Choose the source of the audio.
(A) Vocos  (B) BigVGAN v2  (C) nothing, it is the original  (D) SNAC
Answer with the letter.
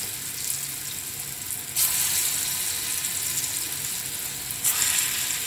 C